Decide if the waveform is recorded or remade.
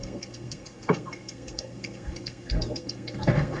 remade